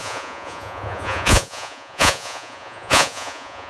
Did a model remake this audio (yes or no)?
yes